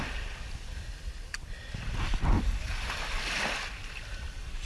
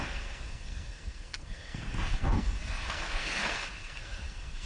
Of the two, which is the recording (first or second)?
first